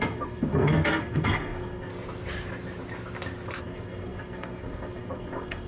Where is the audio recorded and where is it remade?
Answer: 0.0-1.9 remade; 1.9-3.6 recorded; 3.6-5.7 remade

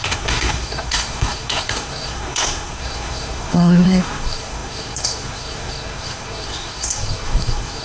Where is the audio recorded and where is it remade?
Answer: 0.0-7.8 remade